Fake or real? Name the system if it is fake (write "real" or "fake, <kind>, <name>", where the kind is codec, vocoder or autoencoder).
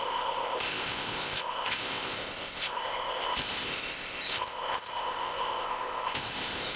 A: fake, codec, ZipCodec